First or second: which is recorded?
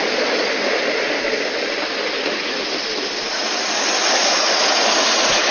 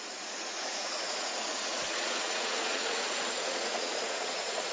first